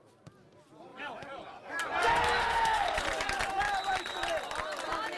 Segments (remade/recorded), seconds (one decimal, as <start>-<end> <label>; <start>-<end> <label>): 0.0-2.4 recorded; 2.4-3.0 remade; 3.0-5.2 recorded